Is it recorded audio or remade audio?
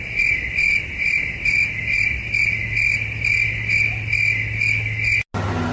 recorded